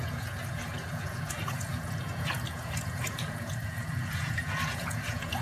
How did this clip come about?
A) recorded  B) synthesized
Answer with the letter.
B